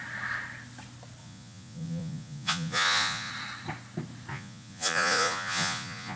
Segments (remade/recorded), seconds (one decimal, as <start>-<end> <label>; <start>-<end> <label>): 0.0-1.2 recorded; 1.2-3.3 remade; 3.3-4.3 recorded; 4.3-6.2 remade